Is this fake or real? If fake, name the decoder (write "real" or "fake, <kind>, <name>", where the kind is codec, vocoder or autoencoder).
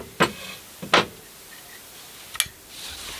real